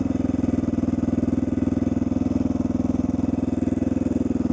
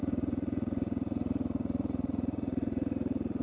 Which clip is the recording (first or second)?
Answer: first